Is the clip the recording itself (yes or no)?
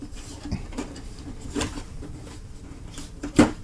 no